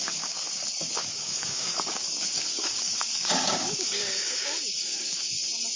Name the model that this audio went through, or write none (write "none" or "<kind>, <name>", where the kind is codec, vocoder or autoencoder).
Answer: codec, DAC